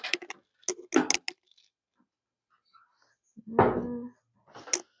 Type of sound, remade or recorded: recorded